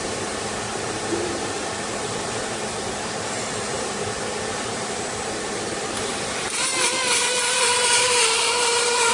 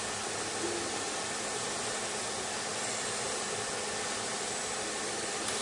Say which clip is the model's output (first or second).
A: first